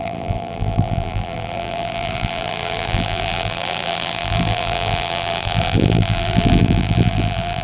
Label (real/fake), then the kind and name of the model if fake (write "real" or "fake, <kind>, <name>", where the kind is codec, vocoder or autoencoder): fake, vocoder, BigVGAN v2